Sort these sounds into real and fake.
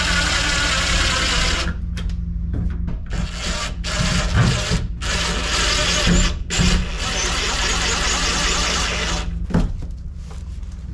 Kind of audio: real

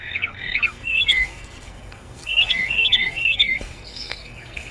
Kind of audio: fake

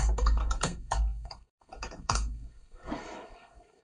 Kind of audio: fake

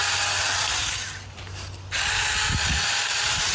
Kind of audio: real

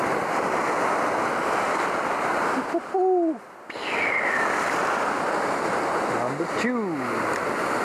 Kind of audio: real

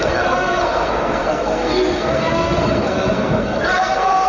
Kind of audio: fake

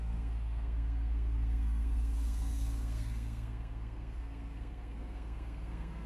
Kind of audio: fake